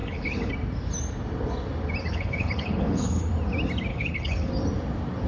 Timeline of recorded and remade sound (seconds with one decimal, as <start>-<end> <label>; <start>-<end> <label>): 0.0-0.5 remade; 0.5-2.1 recorded; 2.1-3.3 remade; 3.3-3.9 recorded; 3.9-4.5 remade; 4.5-5.3 recorded